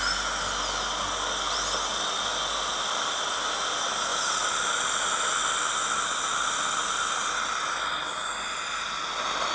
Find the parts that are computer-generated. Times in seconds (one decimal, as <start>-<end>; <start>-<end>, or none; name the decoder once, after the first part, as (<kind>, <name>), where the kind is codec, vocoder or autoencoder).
none